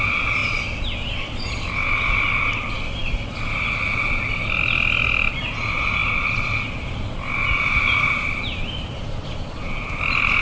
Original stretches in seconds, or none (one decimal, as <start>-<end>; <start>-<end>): 0.0-10.4